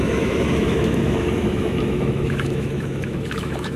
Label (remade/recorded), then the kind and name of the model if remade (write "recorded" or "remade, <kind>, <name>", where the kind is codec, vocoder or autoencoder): remade, autoencoder, DAC-VAE